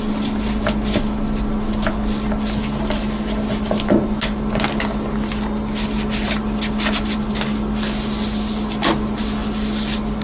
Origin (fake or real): real